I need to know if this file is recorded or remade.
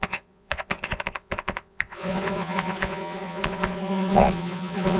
remade